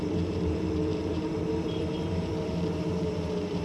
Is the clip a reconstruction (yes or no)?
yes